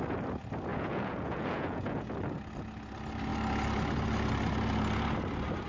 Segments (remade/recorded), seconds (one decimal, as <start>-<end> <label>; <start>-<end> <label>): 0.0-0.7 recorded; 0.7-2.1 remade; 2.1-5.7 recorded